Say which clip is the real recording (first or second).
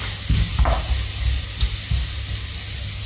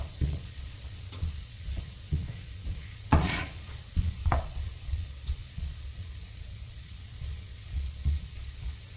first